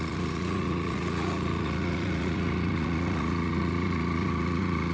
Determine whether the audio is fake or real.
fake